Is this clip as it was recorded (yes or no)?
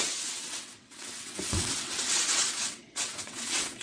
no